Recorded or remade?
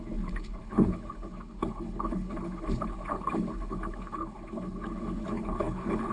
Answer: remade